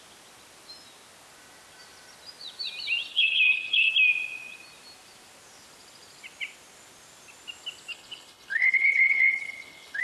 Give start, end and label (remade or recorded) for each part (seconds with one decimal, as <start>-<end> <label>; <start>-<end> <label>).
0.0-3.1 recorded; 3.1-3.9 remade; 3.9-7.9 recorded; 7.9-10.0 remade